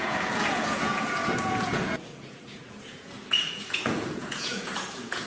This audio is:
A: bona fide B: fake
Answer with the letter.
B